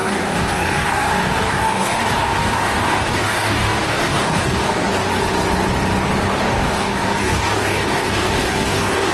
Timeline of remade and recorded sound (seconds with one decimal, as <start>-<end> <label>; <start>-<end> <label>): 0.0-5.1 remade; 5.1-6.4 recorded; 6.4-9.1 remade